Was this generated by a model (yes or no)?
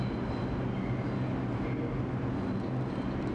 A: no